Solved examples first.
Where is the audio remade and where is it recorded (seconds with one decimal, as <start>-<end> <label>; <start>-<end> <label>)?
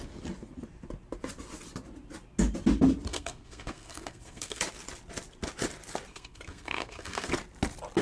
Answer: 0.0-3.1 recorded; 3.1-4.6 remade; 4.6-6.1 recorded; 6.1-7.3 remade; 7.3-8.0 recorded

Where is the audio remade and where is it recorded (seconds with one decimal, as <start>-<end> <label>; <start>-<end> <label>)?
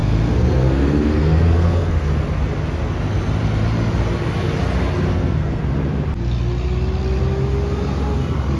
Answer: 0.0-2.1 remade; 2.1-5.1 recorded; 5.1-5.6 remade; 5.6-8.6 recorded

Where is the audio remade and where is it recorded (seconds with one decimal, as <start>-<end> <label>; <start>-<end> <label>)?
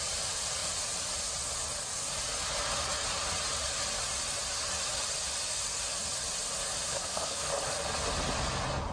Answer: 0.0-6.9 recorded; 6.9-7.5 remade; 7.5-8.9 recorded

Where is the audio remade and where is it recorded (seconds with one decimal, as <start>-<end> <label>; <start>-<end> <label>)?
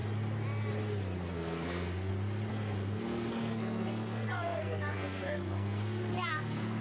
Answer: 0.0-1.3 recorded; 1.3-2.1 remade; 2.1-2.5 recorded; 2.5-6.8 remade